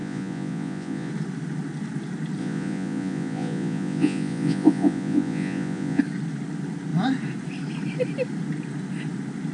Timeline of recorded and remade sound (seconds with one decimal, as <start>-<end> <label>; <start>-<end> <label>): 0.0-1.1 remade; 1.1-2.4 recorded; 2.4-6.0 remade; 6.0-9.5 recorded